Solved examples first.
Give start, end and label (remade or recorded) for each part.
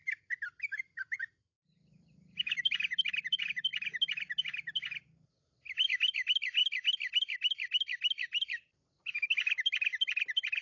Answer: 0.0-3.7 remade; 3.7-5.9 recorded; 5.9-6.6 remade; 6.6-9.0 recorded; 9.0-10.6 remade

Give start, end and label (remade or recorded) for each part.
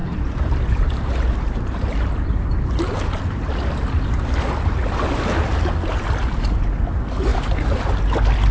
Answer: 0.0-3.5 remade; 3.5-7.3 recorded; 7.3-7.9 remade; 7.9-8.5 recorded